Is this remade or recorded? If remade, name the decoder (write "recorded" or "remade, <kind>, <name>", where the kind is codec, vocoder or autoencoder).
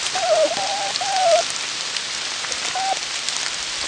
recorded